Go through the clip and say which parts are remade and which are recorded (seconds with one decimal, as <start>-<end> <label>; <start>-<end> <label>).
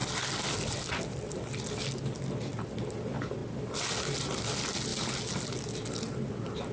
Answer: 0.0-6.7 recorded